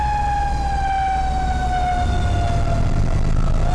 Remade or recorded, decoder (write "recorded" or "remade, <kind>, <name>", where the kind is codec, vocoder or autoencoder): recorded